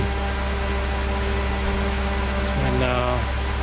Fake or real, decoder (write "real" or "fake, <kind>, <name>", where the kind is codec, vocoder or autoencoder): real